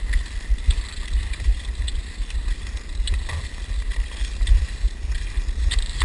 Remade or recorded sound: recorded